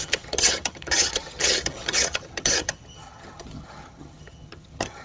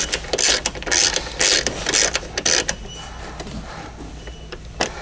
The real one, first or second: second